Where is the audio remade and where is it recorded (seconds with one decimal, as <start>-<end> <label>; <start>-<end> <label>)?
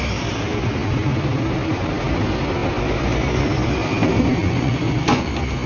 0.0-4.4 recorded; 4.4-5.3 remade; 5.3-5.7 recorded